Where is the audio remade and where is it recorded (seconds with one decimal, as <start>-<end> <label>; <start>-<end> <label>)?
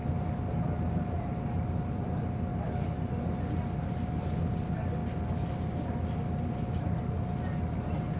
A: 0.0-8.2 recorded